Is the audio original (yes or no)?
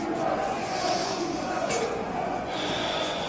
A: no